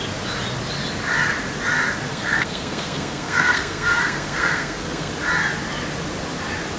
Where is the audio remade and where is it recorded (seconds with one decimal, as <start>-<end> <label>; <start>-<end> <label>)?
0.0-2.1 recorded; 2.1-5.1 remade; 5.1-6.8 recorded